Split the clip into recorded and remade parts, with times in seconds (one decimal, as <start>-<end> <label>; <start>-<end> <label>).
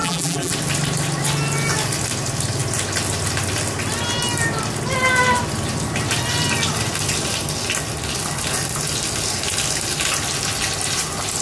0.0-0.5 remade; 0.5-11.4 recorded